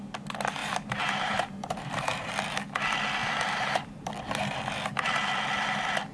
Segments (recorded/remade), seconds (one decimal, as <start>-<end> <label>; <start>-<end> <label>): 0.0-0.6 recorded; 0.6-2.3 remade; 2.3-3.2 recorded; 3.2-4.1 remade; 4.1-6.1 recorded